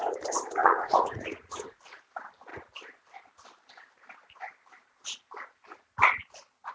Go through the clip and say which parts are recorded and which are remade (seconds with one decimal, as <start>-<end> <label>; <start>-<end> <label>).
0.0-0.6 recorded; 0.6-1.8 remade; 1.8-6.7 recorded

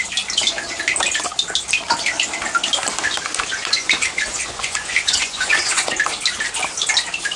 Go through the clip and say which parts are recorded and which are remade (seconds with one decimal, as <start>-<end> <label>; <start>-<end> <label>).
0.0-3.5 recorded; 3.5-6.0 remade; 6.0-7.4 recorded

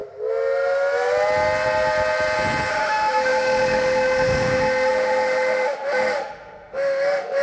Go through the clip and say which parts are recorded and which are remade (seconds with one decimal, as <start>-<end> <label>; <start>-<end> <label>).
0.0-2.7 recorded; 2.7-7.4 remade